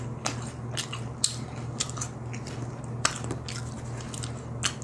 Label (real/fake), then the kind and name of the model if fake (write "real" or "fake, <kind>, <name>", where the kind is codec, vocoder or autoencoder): real